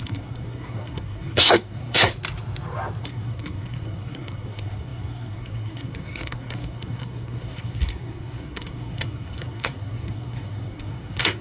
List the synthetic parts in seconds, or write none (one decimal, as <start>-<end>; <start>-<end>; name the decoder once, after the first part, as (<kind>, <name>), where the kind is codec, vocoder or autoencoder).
0.0-2.1 (codec, SNAC); 3.0-11.4